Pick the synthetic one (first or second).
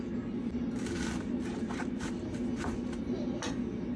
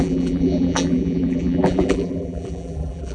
second